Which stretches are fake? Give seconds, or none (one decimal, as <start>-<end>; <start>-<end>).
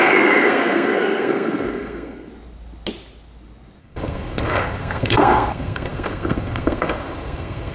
0.0-2.3; 3.8-7.7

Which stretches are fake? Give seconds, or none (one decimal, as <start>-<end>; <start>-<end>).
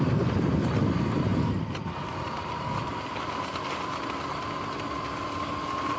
none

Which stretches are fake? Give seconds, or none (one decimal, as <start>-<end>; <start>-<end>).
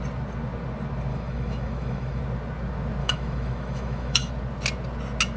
1.1-2.2; 3.0-4.3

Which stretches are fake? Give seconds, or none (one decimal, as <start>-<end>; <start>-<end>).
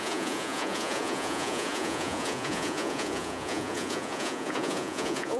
0.0-5.4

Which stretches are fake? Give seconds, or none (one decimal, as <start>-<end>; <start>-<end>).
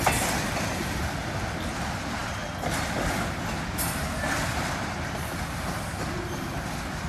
none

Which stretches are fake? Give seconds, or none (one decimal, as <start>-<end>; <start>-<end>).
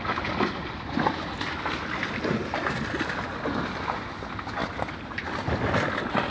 4.6-5.7